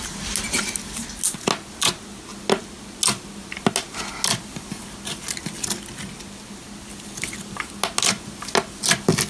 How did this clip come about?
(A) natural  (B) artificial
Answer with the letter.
A